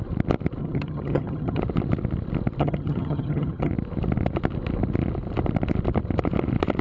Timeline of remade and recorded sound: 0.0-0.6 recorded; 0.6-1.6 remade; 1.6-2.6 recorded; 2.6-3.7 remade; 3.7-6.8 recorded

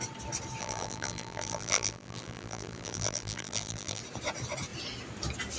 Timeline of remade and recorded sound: 0.0-0.6 recorded; 0.6-4.0 remade; 4.0-5.6 recorded

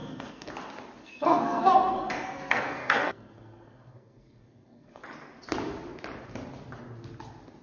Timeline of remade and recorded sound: 0.0-0.5 remade; 0.5-1.0 recorded; 1.0-5.0 remade; 5.0-7.6 recorded

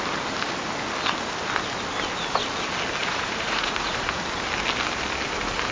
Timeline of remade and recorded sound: 0.0-3.0 recorded; 3.0-4.2 remade; 4.2-5.7 recorded

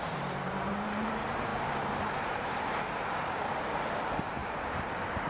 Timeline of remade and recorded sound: 0.0-5.3 remade

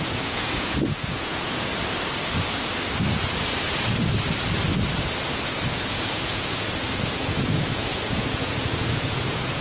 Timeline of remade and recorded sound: 0.0-1.7 remade; 1.7-5.3 recorded; 5.3-9.6 remade